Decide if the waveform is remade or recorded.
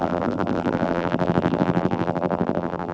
remade